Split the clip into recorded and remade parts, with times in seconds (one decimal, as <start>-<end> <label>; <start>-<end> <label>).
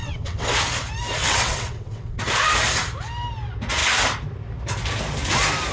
0.0-0.5 remade; 0.5-1.2 recorded; 1.2-2.2 remade; 2.2-5.7 recorded